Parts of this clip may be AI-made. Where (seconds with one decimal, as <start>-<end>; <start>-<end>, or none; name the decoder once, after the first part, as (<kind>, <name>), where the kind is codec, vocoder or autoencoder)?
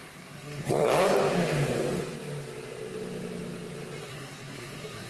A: 0.0-0.9 (codec, SNAC); 4.0-5.1